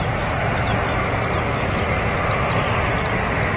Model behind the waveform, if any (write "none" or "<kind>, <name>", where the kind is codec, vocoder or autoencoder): none